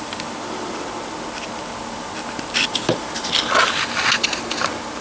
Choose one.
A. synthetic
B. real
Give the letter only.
B